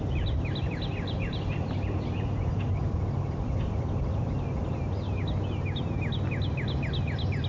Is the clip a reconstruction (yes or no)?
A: no